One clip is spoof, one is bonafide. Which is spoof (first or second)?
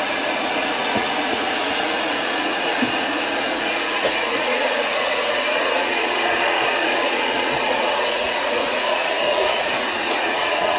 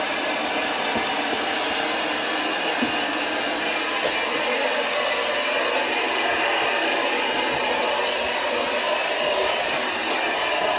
first